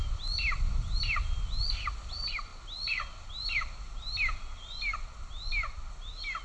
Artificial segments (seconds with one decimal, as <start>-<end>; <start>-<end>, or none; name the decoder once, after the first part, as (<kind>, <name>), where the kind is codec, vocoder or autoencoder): none